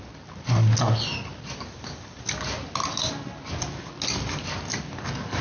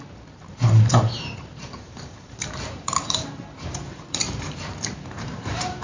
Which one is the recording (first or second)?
first